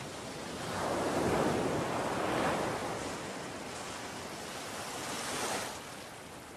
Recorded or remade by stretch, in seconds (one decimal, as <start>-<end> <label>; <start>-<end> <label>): 0.0-6.6 recorded